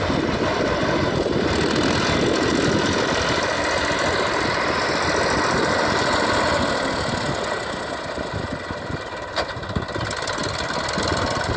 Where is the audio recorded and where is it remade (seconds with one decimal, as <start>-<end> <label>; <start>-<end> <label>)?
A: 0.0-11.6 recorded